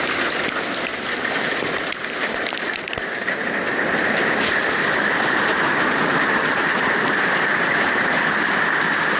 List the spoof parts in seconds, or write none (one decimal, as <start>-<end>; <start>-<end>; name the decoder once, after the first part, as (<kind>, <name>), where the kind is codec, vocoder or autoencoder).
0.0-9.2 (vocoder, BigVGAN v2)